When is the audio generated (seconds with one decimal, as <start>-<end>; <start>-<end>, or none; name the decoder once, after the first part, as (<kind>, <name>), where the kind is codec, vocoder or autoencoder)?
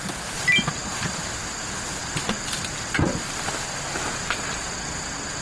none